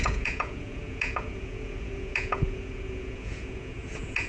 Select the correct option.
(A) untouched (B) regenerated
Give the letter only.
B